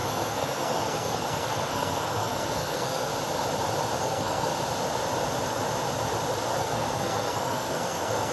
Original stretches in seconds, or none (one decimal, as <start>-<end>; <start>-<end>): 3.1-4.0; 4.5-6.6